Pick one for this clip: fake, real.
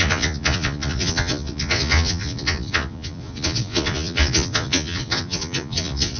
fake